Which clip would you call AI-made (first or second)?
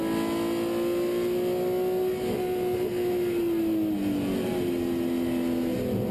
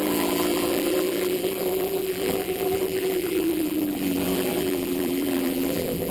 second